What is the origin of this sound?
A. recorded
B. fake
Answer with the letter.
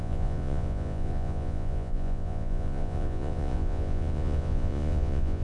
B